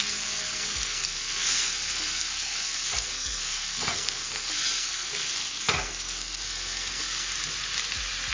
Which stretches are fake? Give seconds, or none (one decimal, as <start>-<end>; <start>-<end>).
0.0-7.3

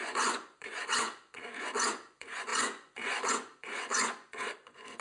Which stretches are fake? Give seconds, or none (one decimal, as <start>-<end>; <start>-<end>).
0.0-5.0

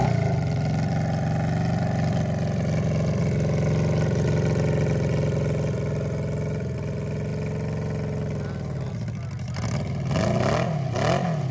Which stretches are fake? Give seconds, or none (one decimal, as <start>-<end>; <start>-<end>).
none

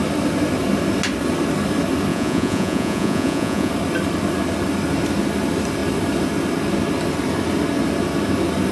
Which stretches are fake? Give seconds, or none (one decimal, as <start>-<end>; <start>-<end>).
2.1-3.7

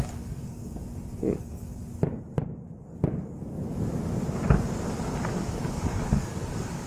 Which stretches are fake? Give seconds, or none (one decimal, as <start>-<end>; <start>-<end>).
0.0-0.8; 1.4-1.8; 5.5-6.9

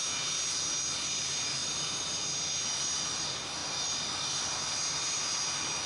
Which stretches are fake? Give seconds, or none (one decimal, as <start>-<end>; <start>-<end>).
1.6-2.2

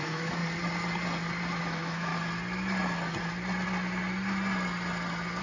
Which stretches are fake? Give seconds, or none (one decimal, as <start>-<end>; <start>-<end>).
0.0-0.4; 1.6-2.1